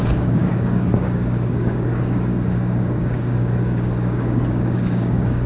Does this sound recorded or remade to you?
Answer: remade